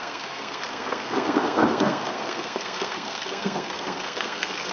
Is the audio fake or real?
fake